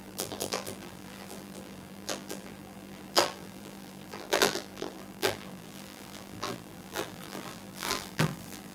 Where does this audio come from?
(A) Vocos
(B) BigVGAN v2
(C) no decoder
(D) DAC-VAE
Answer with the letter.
B